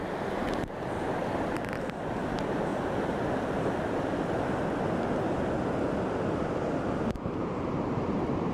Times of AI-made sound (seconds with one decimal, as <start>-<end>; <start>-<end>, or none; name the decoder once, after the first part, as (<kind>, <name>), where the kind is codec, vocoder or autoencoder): 0.0-2.7 (vocoder, BigVGAN v2); 7.2-8.5